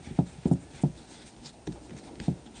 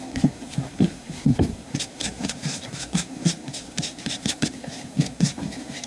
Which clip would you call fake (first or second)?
second